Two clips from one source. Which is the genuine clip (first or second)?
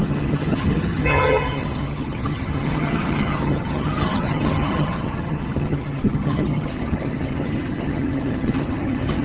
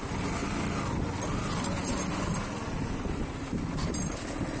second